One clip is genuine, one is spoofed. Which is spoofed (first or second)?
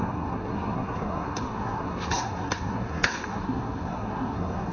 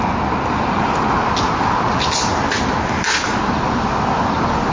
first